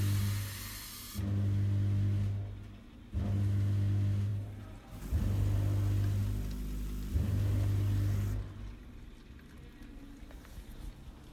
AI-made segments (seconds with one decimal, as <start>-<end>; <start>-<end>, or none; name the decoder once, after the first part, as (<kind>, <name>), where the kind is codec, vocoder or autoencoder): 4.3-5.2 (vocoder, BigVGAN v2)